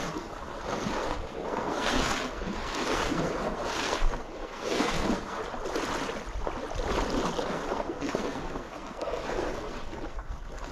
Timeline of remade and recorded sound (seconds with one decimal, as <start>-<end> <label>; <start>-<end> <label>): 0.0-5.4 remade; 5.4-7.5 recorded; 7.5-10.7 remade